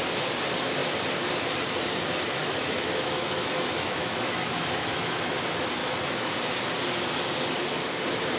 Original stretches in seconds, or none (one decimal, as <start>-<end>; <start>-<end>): 0.0-2.4; 5.3-5.8; 6.3-8.4